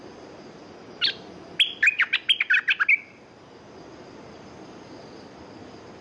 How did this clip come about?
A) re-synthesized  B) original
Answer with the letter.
B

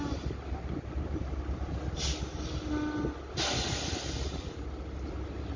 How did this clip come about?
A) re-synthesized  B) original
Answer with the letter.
B